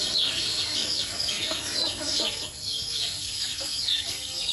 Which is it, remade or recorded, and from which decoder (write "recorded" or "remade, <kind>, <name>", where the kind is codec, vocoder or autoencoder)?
remade, codec, SNAC